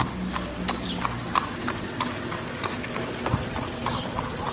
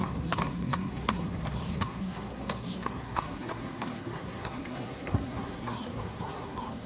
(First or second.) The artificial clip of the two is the second